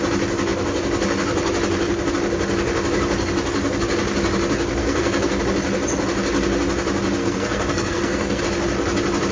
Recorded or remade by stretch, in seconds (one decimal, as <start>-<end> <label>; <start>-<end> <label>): 0.0-4.8 recorded; 4.8-5.4 remade; 5.4-7.2 recorded; 7.2-8.4 remade; 8.4-9.3 recorded

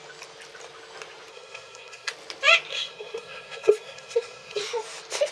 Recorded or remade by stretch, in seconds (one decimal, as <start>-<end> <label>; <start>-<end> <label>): 0.0-1.3 recorded; 1.3-2.1 remade; 2.1-2.7 recorded; 2.7-4.6 remade; 4.6-5.3 recorded